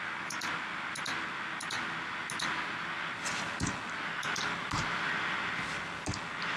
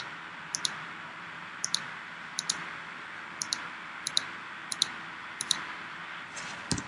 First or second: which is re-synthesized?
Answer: second